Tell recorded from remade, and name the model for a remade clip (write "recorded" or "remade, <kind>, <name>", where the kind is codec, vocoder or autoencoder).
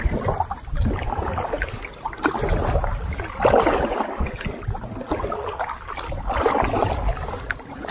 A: recorded